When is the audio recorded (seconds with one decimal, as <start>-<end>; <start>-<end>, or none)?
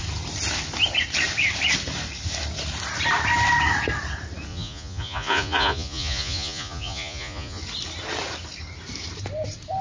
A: 0.0-4.5; 7.6-9.8